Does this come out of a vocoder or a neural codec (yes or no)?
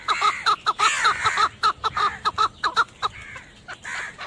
no